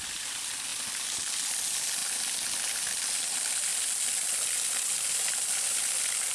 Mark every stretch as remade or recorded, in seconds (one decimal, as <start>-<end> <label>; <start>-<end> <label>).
0.0-6.3 recorded